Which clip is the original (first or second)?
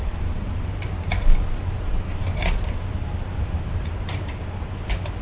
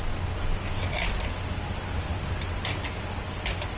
second